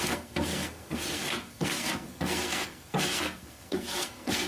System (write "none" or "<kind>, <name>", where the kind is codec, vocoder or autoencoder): codec, SNAC